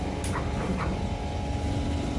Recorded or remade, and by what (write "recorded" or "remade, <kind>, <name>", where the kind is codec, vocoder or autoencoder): recorded